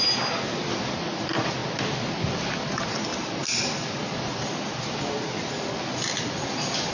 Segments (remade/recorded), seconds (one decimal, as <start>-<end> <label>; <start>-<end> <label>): 0.0-6.9 recorded